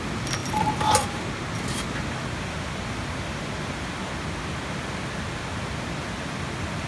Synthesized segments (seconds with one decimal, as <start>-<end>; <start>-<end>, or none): none